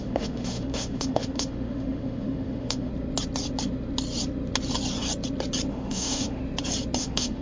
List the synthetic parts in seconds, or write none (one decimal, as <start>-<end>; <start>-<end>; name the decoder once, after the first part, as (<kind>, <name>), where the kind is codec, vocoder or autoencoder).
0.0-2.9 (autoencoder, DAC-VAE); 5.7-6.4; 7.0-7.4